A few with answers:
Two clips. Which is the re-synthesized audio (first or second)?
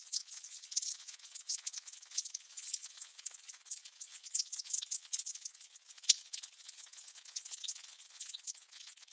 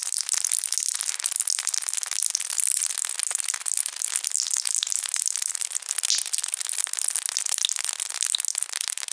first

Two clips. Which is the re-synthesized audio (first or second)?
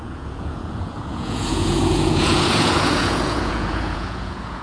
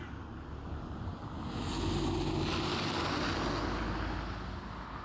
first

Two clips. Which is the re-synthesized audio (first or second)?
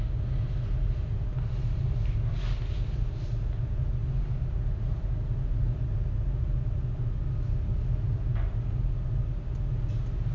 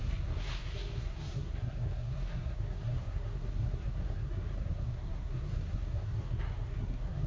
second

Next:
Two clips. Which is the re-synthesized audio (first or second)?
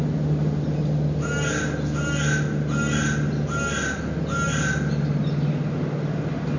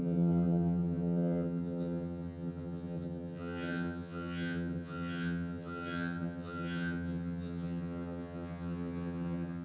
second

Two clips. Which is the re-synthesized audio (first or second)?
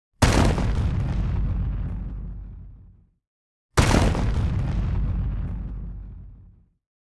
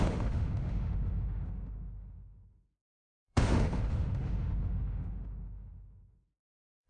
second